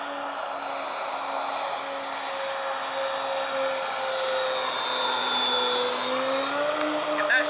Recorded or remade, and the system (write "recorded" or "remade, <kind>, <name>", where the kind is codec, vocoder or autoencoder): recorded